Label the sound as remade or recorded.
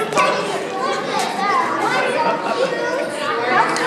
recorded